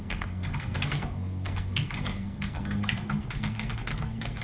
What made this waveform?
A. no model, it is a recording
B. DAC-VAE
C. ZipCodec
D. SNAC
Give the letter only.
D